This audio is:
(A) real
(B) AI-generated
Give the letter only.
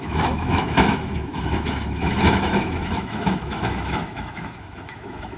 B